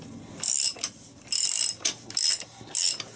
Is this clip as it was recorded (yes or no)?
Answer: yes